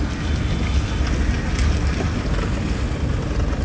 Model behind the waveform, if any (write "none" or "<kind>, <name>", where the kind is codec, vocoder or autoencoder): none